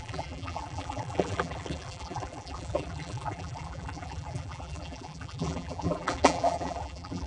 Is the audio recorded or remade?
remade